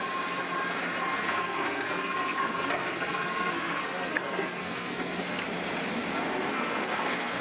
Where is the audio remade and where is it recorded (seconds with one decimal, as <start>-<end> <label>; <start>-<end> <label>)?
0.0-1.0 recorded; 1.0-5.4 remade; 5.4-6.5 recorded; 6.5-7.4 remade